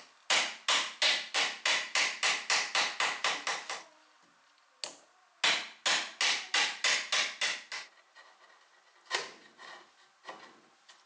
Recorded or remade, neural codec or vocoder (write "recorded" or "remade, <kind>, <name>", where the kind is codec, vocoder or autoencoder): recorded